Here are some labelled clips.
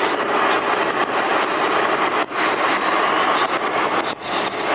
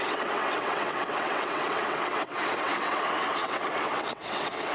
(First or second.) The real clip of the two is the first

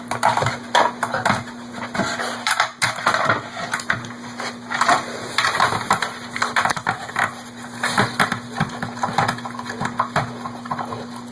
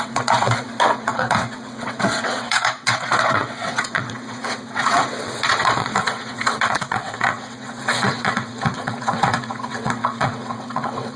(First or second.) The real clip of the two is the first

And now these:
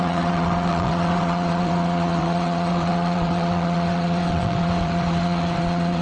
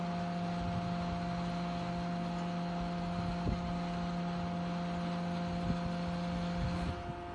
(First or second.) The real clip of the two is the second